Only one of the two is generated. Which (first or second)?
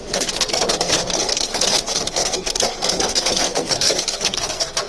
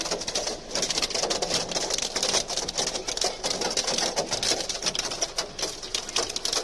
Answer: first